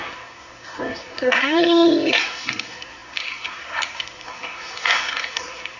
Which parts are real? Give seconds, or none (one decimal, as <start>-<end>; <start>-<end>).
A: none